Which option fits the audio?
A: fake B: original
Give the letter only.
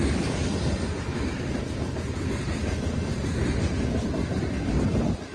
B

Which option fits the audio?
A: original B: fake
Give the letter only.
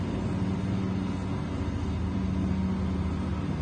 A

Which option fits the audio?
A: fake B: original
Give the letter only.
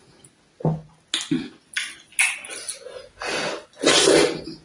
B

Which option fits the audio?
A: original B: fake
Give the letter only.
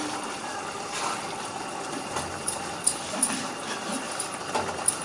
B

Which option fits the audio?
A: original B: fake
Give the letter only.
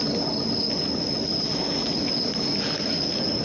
A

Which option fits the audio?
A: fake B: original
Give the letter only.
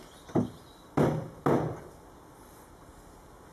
B